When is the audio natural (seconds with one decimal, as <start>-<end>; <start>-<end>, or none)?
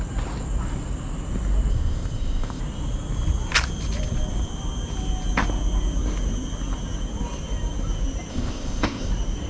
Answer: 0.0-1.7; 2.6-8.3; 9.1-9.5